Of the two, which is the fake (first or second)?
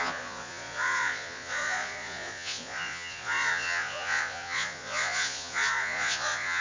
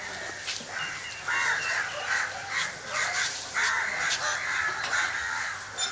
first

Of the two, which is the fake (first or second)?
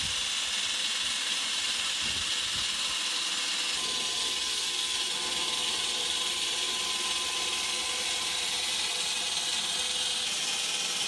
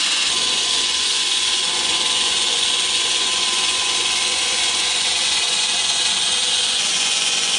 second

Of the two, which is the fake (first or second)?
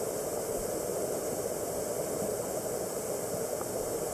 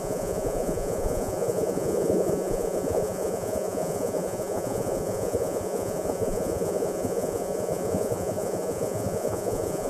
second